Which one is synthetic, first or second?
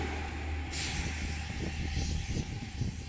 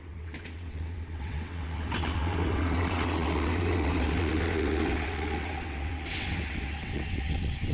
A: second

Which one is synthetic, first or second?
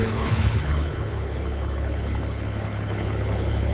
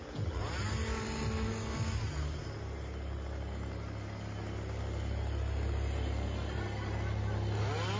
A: first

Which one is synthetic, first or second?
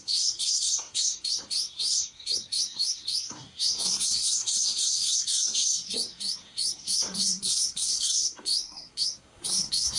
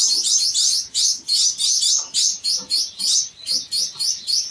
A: first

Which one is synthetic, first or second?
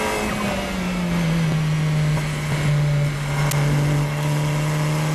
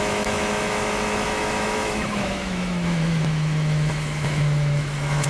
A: second